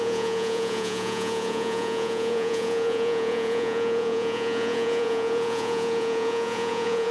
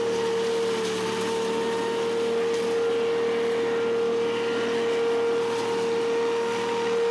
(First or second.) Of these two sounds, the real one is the second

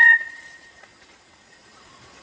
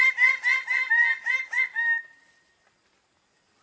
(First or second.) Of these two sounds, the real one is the second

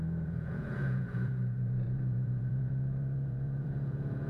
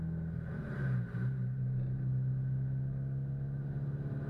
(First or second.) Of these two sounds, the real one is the second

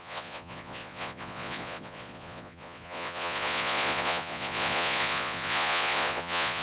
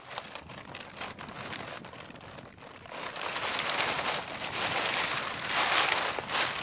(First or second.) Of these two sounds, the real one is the second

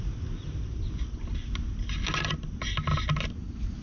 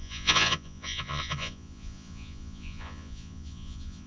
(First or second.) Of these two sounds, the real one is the first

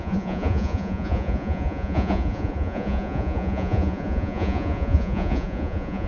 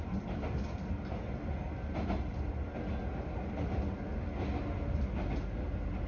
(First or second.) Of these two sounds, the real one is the second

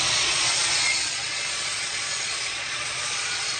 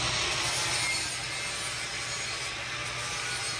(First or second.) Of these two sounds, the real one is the second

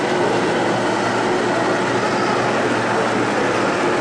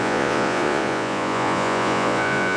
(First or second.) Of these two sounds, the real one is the first